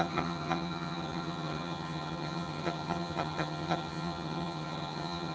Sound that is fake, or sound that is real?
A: fake